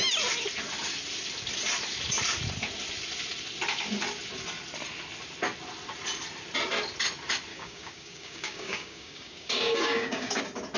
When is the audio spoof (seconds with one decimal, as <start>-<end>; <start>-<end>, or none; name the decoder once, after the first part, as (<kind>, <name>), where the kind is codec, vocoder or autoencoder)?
7.5-10.4 (codec, DAC)